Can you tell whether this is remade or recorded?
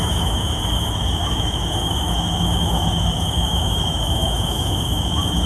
remade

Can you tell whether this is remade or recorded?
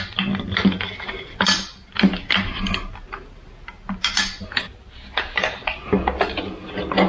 recorded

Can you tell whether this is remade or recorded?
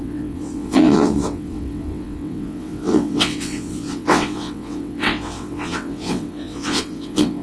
remade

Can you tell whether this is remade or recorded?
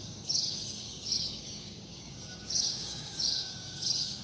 remade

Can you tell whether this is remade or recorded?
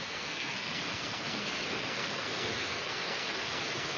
remade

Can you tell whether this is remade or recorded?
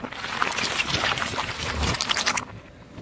remade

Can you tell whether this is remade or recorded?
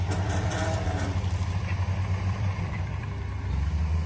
remade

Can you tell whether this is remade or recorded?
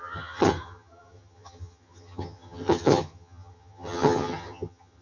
remade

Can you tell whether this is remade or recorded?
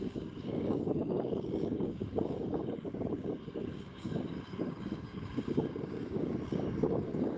remade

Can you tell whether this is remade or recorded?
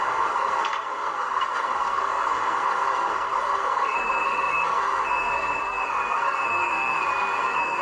remade